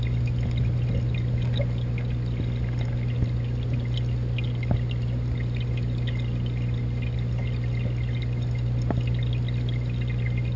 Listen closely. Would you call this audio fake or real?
real